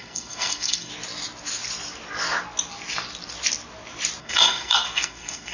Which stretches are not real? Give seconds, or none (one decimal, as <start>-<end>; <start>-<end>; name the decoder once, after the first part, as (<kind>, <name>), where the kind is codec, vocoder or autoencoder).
0.0-0.9 (codec, SNAC); 4.2-5.5